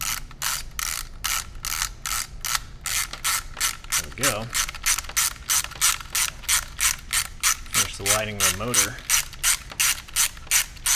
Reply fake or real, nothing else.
real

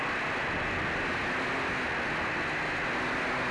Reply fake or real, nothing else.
real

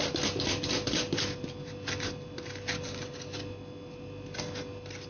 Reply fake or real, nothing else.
real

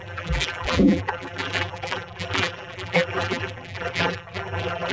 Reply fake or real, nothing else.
fake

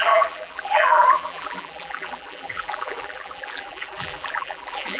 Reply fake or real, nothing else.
fake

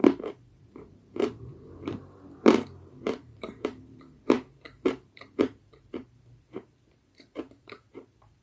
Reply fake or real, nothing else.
fake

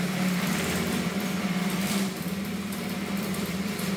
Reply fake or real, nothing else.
fake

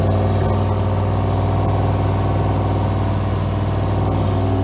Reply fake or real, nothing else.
real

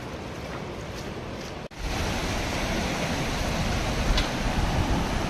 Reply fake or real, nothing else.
real